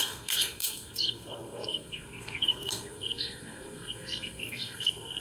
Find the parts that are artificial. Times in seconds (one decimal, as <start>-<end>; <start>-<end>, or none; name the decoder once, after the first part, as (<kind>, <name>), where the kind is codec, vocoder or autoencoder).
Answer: 0.0-5.2 (codec, SNAC)